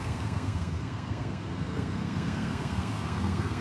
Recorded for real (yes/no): no